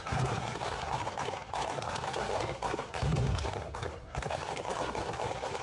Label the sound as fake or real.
fake